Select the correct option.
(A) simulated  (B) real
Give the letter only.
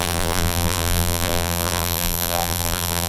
A